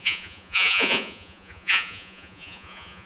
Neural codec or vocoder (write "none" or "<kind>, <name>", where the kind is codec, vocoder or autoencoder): vocoder, Vocos